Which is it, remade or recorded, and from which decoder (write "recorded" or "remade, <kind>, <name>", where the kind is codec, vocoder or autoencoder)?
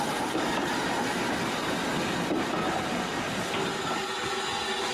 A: recorded